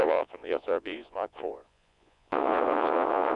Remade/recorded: remade